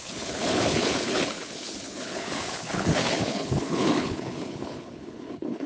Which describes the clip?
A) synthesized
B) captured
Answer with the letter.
A